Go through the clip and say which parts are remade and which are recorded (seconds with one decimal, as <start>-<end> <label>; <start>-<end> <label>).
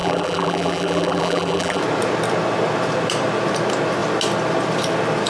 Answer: 0.0-1.8 remade; 1.8-5.3 recorded